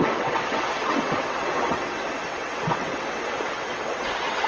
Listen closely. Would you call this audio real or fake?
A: fake